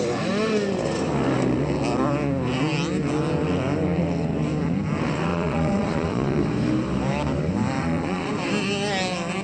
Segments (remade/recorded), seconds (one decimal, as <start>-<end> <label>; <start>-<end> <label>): 0.0-5.3 recorded; 5.3-6.4 remade; 6.4-7.8 recorded; 7.8-8.3 remade; 8.3-9.4 recorded